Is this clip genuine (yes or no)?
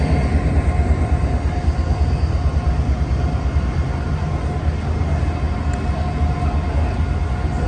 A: yes